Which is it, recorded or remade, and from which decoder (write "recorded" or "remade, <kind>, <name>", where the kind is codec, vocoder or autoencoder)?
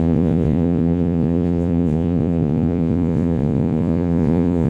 remade, vocoder, Vocos